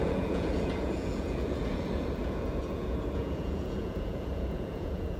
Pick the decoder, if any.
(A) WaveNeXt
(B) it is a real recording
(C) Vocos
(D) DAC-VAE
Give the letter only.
C